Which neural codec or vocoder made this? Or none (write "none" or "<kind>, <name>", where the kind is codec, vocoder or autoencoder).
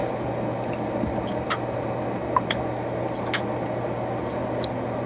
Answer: none